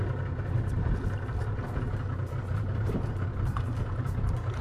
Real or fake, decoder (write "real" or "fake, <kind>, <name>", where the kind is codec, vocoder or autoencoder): real